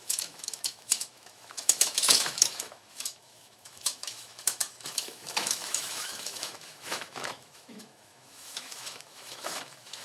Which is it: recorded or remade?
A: remade